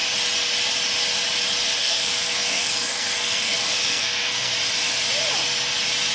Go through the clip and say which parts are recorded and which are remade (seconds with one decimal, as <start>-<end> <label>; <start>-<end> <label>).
0.0-1.8 recorded; 1.8-4.5 remade; 4.5-6.1 recorded